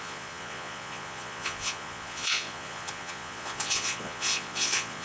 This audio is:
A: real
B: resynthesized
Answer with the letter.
B